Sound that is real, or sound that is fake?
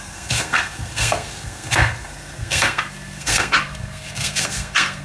fake